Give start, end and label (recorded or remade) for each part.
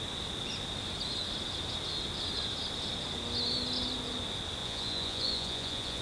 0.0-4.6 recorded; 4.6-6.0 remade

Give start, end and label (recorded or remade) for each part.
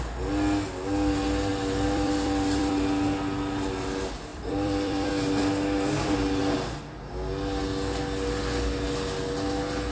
0.0-1.5 recorded; 1.5-2.7 remade; 2.7-4.3 recorded; 4.3-5.1 remade; 5.1-9.9 recorded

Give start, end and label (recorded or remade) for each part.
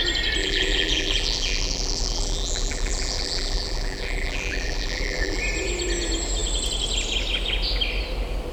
0.0-0.4 recorded; 0.4-5.4 remade; 5.4-8.5 recorded